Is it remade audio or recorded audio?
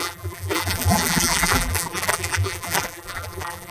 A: remade